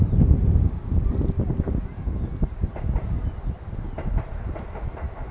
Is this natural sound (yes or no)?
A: yes